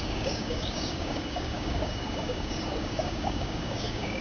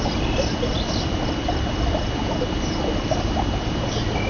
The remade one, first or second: first